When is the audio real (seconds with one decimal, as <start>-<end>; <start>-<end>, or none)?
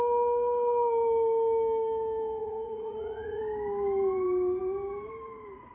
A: 0.0-2.4; 3.4-5.7